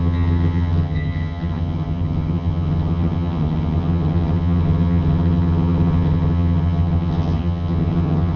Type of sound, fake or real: fake